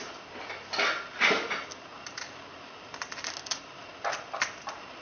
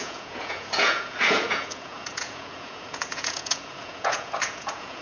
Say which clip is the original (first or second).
first